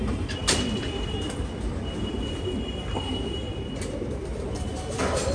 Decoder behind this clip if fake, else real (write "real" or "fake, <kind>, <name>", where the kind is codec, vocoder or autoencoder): real